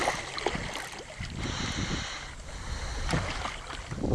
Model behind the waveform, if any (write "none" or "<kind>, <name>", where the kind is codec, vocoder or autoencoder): none